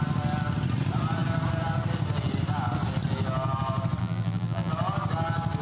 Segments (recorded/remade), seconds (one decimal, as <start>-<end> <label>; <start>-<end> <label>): 0.0-4.0 recorded; 4.0-4.7 remade; 4.7-5.6 recorded